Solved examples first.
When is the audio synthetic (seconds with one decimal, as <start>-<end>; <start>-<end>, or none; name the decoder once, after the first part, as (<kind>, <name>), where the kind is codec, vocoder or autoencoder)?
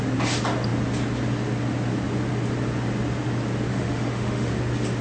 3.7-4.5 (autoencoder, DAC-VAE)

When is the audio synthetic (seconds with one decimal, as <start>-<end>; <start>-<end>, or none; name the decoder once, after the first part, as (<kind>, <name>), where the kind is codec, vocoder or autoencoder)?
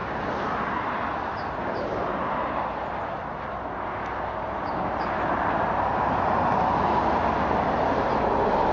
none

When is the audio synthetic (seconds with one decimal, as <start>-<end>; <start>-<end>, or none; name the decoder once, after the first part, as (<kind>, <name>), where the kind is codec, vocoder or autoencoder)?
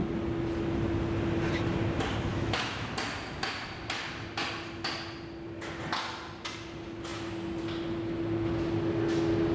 2.3-2.9 (autoencoder, DAC-VAE)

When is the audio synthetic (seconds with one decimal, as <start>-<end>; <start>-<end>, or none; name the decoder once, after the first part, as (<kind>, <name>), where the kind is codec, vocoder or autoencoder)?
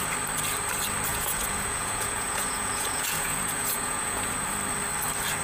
1.1-4.3 (vocoder, Vocos)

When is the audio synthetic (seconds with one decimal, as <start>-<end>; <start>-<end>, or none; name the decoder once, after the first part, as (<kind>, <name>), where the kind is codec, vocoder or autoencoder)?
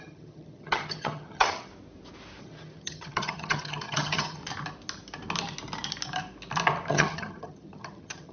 0.0-1.7 (vocoder, HiFi-GAN); 2.4-4.4; 6.9-8.3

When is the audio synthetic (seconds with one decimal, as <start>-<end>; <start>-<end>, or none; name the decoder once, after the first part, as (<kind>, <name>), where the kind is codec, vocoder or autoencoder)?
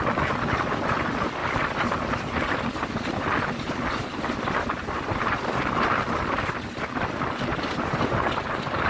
7.5-8.2 (vocoder, BigVGAN v2)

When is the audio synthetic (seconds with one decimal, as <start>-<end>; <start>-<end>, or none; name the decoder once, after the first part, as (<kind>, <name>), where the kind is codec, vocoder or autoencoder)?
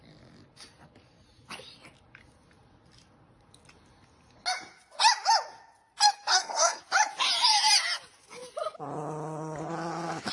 6.3-6.8 (codec, SNAC)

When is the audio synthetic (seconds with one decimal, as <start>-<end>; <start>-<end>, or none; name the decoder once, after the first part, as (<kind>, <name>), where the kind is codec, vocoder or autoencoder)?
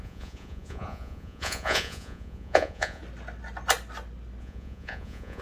0.0-3.0 (vocoder, Vocos); 4.4-5.4